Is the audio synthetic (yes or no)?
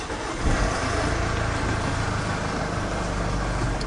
no